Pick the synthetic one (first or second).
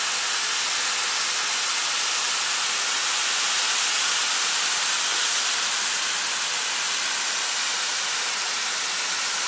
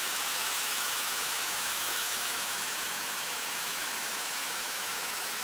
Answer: second